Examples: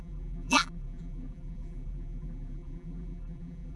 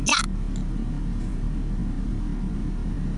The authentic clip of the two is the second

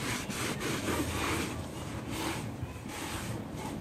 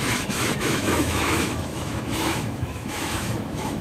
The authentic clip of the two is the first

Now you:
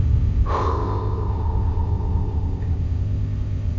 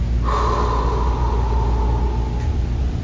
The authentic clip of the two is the second